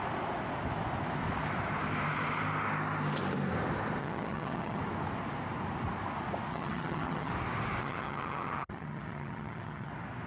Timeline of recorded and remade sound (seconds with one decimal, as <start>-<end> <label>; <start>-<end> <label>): 0.0-4.0 recorded; 4.0-4.8 remade; 4.8-6.5 recorded; 6.5-7.3 remade; 7.3-7.8 recorded; 7.8-9.9 remade; 9.9-10.3 recorded